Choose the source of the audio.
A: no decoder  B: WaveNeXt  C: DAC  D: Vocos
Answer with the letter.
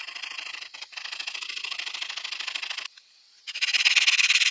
A